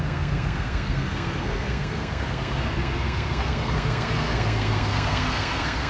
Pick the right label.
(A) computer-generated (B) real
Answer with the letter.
A